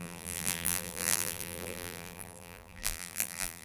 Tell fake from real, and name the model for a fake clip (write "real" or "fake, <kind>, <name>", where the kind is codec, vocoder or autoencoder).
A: fake, vocoder, BigVGAN v2